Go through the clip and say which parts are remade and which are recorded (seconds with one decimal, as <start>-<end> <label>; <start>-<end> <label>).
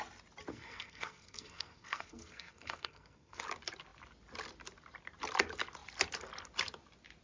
0.0-0.5 recorded; 0.5-3.4 remade; 3.4-7.2 recorded